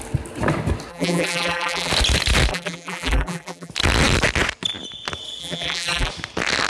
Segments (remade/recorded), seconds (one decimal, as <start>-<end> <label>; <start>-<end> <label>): 0.0-0.9 recorded; 0.9-1.9 remade; 1.9-2.5 recorded; 2.5-3.7 remade; 3.7-5.4 recorded; 5.4-6.1 remade; 6.1-6.7 recorded